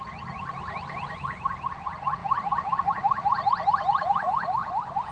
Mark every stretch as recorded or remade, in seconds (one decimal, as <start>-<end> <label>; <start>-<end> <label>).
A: 0.0-5.1 recorded